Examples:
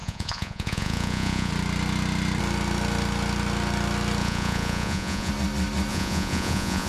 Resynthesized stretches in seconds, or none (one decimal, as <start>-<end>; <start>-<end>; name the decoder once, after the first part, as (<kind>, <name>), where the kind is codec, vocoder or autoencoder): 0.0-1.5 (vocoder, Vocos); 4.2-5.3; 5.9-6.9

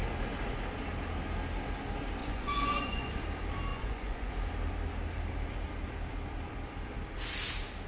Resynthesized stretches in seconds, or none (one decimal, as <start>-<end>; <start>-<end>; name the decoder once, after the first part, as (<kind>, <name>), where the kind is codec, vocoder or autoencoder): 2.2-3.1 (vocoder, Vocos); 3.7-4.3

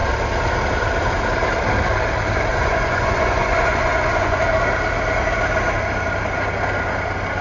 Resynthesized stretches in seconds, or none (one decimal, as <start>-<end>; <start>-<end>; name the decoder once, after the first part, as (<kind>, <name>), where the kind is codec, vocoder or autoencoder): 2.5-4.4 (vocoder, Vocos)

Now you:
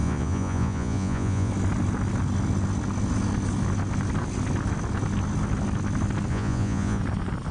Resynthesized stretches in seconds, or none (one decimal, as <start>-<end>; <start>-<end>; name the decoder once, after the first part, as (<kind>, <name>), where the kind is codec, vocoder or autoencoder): 0.0-1.5 (vocoder, Vocos); 6.3-7.0

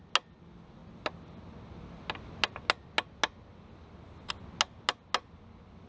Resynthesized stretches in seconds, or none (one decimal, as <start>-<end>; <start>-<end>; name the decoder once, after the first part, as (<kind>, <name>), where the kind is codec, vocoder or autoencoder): none

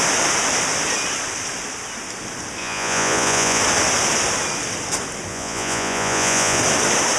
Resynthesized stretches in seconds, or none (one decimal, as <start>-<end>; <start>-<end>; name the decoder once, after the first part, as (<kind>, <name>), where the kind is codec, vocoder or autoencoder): 2.6-3.6 (vocoder, Vocos); 5.3-6.6